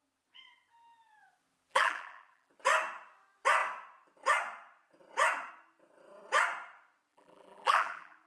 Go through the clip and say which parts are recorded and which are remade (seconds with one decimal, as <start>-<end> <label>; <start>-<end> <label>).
0.0-1.7 recorded; 1.7-2.5 remade; 2.5-7.1 recorded; 7.1-8.3 remade